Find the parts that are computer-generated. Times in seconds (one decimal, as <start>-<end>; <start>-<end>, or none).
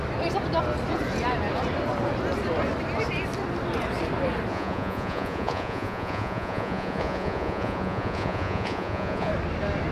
4.5-9.3